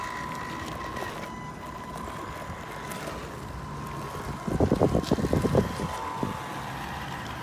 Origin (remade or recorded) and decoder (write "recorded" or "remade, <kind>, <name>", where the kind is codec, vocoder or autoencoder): recorded